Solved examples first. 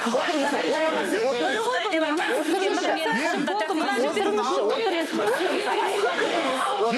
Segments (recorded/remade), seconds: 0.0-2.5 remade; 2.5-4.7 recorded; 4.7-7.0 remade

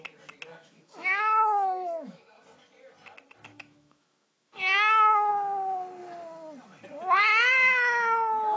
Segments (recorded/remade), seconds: 0.0-0.5 recorded; 0.5-2.2 remade; 2.2-3.5 recorded; 3.5-5.3 remade; 5.3-8.6 recorded

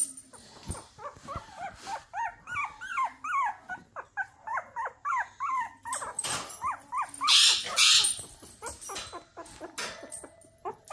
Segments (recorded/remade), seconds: 0.0-10.9 recorded

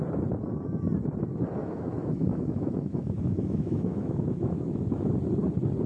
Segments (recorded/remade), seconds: 0.0-1.6 recorded; 1.6-5.1 remade; 5.1-5.9 recorded